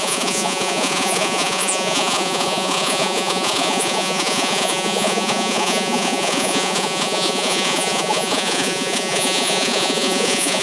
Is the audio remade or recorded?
remade